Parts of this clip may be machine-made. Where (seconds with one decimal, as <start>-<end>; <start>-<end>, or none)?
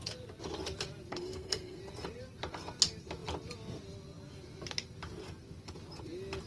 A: 1.1-1.8